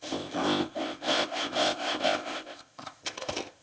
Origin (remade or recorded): remade